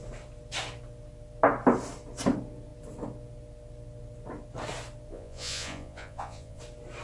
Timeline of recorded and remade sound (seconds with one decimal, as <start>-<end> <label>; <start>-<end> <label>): 0.0-5.1 recorded; 5.1-6.6 remade; 6.6-7.0 recorded